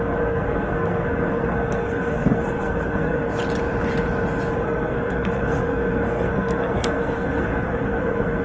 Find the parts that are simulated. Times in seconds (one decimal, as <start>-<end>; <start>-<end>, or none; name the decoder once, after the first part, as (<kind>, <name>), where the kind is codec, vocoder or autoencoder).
0.0-3.3 (codec, SNAC); 4.5-8.4